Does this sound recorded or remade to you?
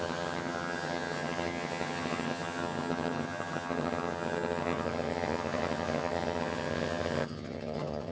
remade